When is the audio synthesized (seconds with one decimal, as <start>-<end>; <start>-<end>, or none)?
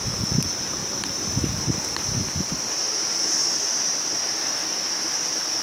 none